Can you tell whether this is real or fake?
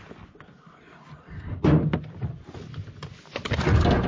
real